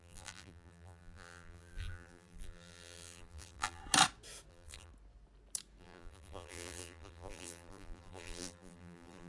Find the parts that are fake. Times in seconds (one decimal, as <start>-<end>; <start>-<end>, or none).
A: 0.0-3.8; 4.5-4.9; 5.8-9.3